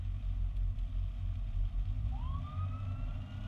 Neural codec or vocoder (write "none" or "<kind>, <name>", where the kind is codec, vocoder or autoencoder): none